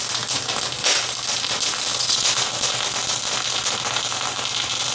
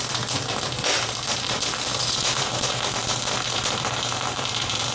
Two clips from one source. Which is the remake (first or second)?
second